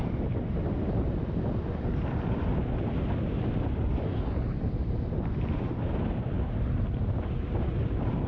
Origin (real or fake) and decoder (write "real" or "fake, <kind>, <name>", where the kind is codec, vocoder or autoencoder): real